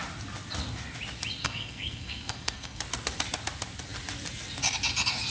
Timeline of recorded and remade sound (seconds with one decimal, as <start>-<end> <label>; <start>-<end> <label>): 0.0-1.4 recorded; 1.4-2.8 remade; 2.8-5.3 recorded